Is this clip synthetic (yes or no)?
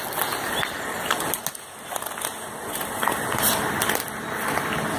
no